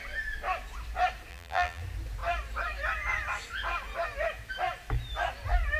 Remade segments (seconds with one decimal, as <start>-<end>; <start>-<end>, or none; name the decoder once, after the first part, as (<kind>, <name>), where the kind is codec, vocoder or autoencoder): 1.3-1.8 (vocoder, BigVGAN v2)